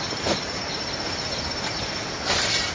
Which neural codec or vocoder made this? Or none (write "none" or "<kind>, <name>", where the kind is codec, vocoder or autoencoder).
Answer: none